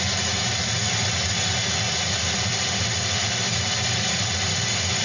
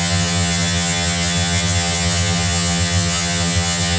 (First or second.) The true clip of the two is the first